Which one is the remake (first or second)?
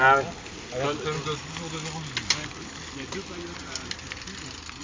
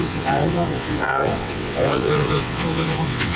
second